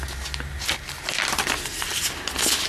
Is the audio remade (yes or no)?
no